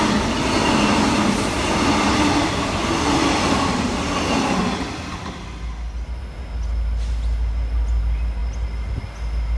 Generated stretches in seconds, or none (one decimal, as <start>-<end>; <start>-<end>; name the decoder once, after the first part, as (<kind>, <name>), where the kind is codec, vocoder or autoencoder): none